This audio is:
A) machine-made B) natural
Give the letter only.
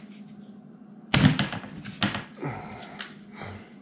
B